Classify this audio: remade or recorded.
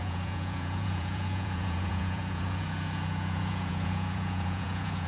remade